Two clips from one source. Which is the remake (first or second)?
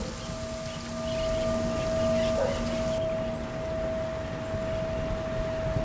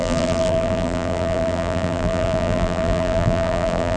second